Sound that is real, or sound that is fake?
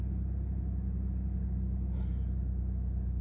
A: real